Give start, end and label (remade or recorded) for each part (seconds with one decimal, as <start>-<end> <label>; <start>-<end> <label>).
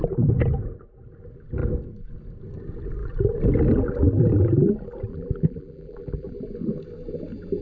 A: 0.0-5.1 recorded; 5.1-6.3 remade; 6.3-7.6 recorded